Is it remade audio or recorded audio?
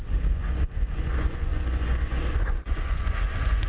remade